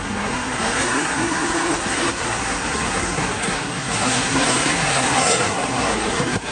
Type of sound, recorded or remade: remade